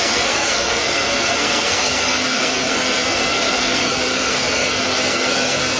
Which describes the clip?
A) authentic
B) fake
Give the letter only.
B